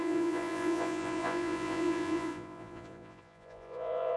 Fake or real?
fake